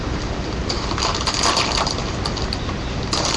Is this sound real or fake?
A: real